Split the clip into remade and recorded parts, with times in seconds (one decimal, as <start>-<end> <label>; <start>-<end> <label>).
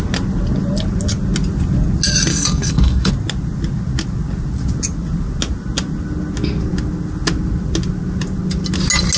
0.0-2.3 recorded; 2.3-3.1 remade; 3.1-9.2 recorded